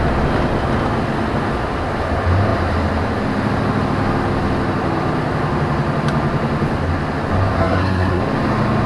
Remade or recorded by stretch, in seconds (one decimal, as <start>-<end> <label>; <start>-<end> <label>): 0.0-7.6 recorded; 7.6-8.2 remade; 8.2-8.9 recorded